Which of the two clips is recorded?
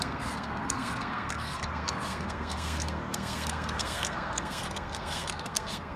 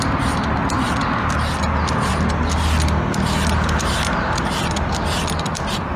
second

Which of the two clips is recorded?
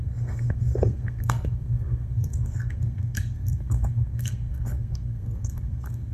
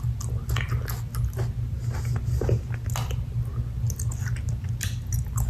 second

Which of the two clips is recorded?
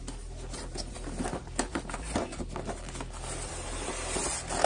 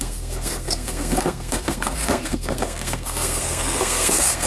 first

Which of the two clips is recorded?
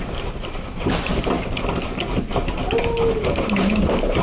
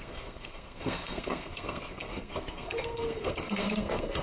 first